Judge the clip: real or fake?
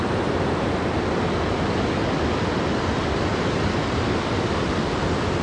real